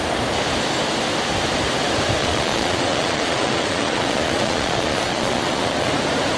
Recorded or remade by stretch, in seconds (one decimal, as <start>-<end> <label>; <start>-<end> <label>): 0.0-2.2 recorded; 2.2-5.9 remade; 5.9-6.4 recorded